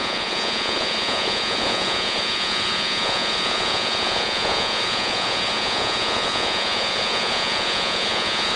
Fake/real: fake